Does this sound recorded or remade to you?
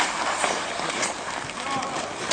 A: recorded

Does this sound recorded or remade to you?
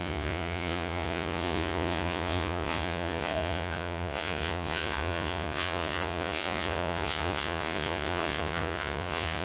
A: remade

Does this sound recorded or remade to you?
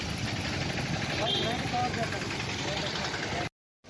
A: recorded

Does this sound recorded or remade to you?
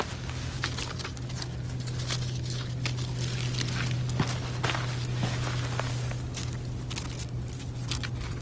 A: recorded